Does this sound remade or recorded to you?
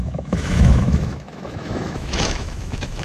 remade